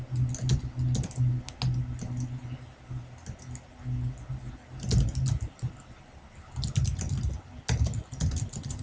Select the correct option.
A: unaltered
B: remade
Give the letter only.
A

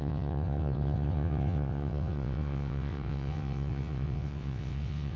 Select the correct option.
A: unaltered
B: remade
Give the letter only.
B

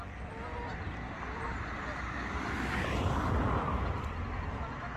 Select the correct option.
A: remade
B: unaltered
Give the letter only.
B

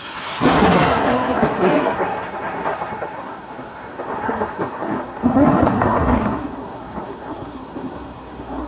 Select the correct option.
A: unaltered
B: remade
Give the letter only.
B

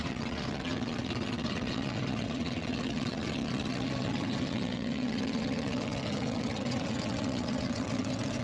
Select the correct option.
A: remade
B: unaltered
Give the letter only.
A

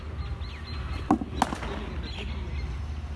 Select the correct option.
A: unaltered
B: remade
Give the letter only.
A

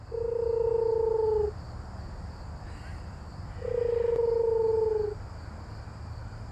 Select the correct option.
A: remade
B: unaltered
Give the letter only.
B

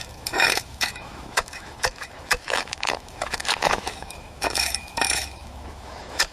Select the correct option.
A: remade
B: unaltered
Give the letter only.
A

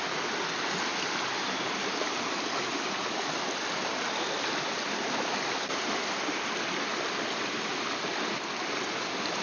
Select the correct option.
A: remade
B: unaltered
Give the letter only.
B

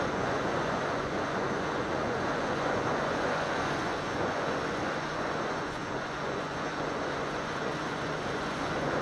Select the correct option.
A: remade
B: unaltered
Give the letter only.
A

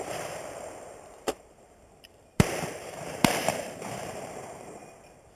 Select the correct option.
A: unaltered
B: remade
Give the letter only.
B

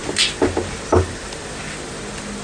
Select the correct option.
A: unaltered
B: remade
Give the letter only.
A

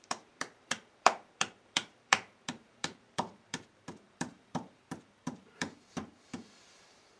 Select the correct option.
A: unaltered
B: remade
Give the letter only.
B